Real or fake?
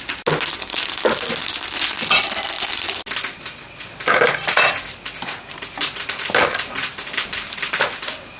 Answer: real